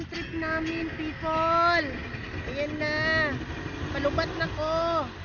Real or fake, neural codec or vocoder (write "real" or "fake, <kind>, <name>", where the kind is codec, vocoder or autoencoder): real